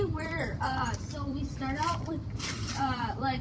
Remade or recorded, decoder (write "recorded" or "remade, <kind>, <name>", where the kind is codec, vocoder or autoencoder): remade, vocoder, BigVGAN v2